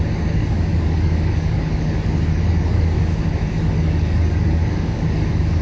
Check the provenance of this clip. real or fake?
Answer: fake